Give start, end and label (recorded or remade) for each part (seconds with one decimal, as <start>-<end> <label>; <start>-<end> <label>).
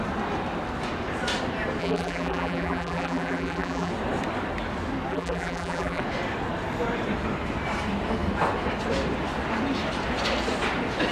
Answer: 0.0-1.8 recorded; 1.8-3.9 remade; 3.9-5.1 recorded; 5.1-6.0 remade; 6.0-11.1 recorded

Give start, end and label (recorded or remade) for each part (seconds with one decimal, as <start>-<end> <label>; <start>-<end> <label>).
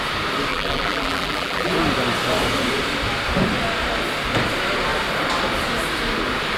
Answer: 0.0-0.5 recorded; 0.5-1.7 remade; 1.7-6.6 recorded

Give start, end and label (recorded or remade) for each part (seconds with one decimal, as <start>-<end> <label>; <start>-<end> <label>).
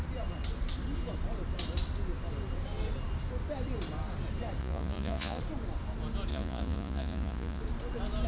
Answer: 0.0-4.6 recorded; 4.6-5.4 remade; 5.4-6.3 recorded; 6.3-7.6 remade; 7.6-8.3 recorded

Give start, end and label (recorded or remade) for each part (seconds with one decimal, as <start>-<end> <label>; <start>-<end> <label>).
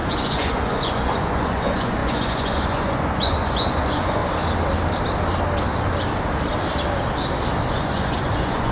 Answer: 0.0-4.2 remade; 4.2-7.7 recorded; 7.7-8.7 remade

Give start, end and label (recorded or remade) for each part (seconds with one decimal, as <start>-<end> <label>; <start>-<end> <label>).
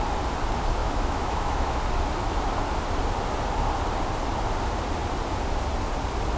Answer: 0.0-0.8 recorded; 0.8-1.8 remade; 1.8-6.4 recorded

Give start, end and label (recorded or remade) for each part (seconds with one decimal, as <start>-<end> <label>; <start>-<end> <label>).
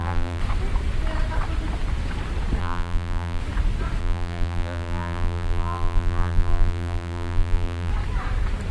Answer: 0.0-0.4 remade; 0.4-2.6 recorded; 2.6-3.4 remade; 3.4-4.0 recorded; 4.0-7.9 remade; 7.9-8.7 recorded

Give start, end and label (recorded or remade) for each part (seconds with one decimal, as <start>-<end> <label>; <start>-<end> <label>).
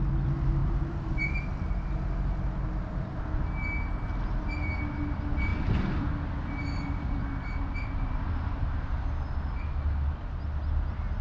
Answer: 0.0-0.6 recorded; 0.6-1.3 remade; 1.3-11.2 recorded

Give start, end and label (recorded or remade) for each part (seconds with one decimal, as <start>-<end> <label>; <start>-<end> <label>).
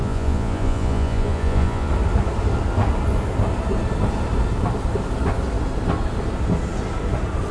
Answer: 0.0-1.9 remade; 1.9-7.5 recorded